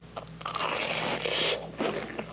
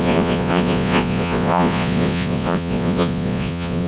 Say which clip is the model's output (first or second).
second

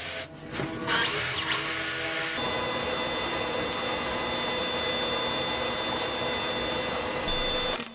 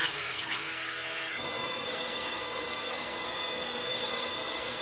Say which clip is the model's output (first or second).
second